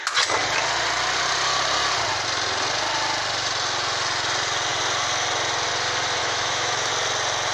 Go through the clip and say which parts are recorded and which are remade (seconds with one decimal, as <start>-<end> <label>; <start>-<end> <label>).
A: 0.0-6.2 recorded; 6.2-6.9 remade; 6.9-7.5 recorded